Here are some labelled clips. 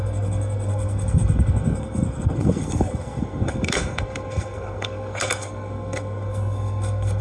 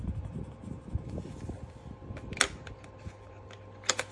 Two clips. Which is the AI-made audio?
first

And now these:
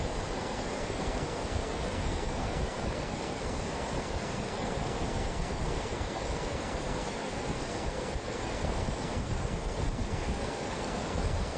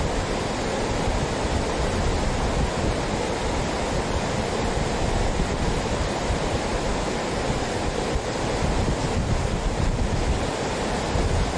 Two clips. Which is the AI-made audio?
first